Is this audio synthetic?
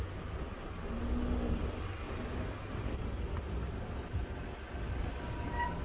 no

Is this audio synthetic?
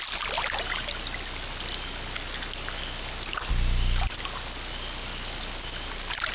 no